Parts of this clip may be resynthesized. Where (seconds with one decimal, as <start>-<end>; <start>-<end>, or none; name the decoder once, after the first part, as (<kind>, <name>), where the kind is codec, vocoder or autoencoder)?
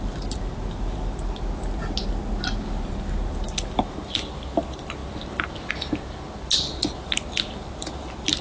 none